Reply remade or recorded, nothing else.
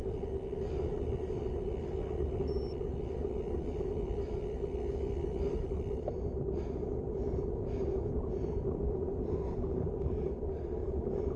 recorded